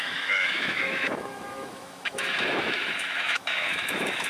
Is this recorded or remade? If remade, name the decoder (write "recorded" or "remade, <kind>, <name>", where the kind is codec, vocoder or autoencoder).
remade, autoencoder, DAC-VAE